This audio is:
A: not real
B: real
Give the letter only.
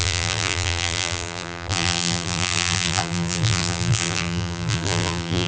A